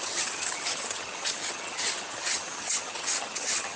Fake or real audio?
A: fake